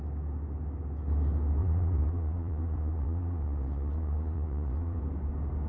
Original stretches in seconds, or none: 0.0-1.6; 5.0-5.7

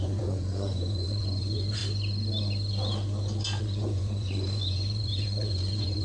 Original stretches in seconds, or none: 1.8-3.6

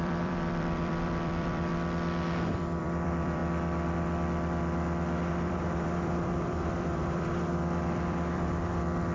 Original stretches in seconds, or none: 1.7-2.5; 3.4-5.3

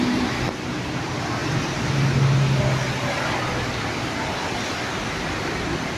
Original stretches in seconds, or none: 0.0-6.0